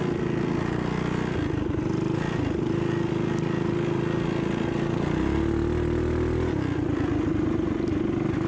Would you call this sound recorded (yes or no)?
yes